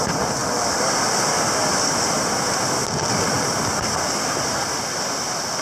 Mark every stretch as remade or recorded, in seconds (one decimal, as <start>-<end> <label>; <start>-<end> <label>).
0.0-5.6 recorded